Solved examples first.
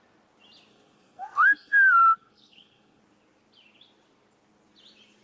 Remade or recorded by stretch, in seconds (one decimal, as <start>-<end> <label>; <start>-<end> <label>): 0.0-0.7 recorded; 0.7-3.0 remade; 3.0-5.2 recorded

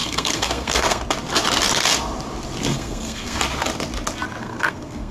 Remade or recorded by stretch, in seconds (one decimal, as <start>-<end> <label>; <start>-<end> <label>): 0.0-1.0 remade; 1.0-2.7 recorded; 2.7-3.4 remade; 3.4-4.4 recorded; 4.4-5.1 remade

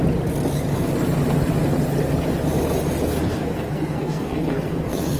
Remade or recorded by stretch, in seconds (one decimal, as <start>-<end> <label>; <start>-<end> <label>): 0.0-3.3 recorded; 3.3-5.2 remade

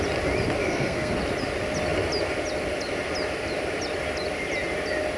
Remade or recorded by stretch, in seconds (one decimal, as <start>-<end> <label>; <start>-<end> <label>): 0.0-0.6 recorded; 0.6-1.1 remade; 1.1-5.2 recorded